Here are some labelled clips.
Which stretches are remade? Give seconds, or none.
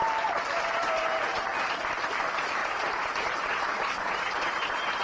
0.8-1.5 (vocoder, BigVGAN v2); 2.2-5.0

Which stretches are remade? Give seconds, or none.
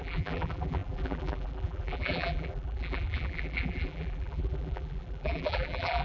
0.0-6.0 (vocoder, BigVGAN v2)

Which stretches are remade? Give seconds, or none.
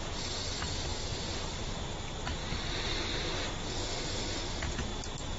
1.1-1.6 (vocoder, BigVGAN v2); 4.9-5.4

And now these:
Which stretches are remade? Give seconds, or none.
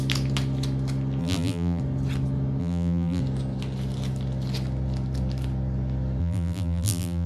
1.2-1.8 (vocoder, BigVGAN v2); 2.6-3.2; 6.2-7.3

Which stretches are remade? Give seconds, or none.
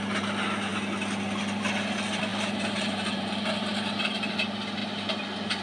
2.3-4.3 (vocoder, BigVGAN v2); 4.8-5.6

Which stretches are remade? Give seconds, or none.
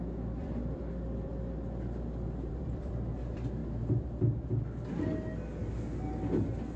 0.0-1.3 (vocoder, BigVGAN v2); 2.5-3.6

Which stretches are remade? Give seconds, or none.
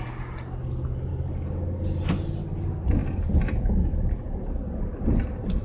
3.0-3.6 (vocoder, BigVGAN v2); 4.6-5.6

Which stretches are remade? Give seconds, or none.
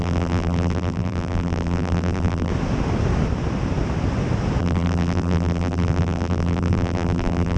0.0-2.5 (vocoder, BigVGAN v2); 4.6-7.6